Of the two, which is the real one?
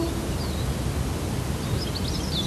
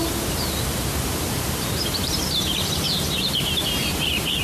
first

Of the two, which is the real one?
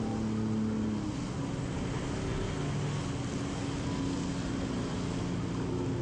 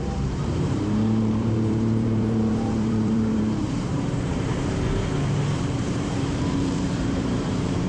first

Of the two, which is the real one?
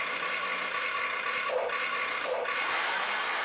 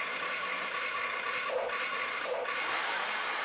first